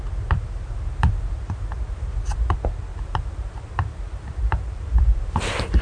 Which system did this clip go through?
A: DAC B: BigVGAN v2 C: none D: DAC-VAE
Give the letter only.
B